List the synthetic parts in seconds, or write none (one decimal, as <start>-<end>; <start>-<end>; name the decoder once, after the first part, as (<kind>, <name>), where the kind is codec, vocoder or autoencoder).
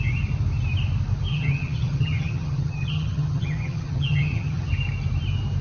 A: 1.3-4.7 (vocoder, HiFi-GAN)